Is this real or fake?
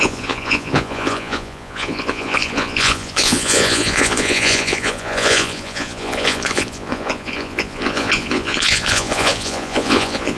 fake